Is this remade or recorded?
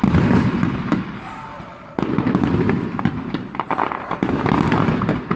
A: recorded